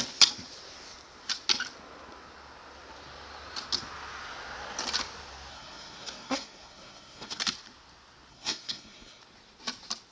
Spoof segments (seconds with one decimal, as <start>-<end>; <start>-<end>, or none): 5.5-7.4; 8.3-9.2